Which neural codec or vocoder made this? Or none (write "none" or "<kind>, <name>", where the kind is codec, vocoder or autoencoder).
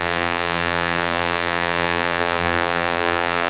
vocoder, BigVGAN v2